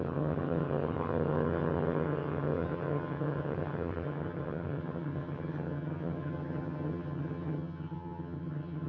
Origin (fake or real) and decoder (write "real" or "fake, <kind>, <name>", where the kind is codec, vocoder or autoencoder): fake, vocoder, HiFi-GAN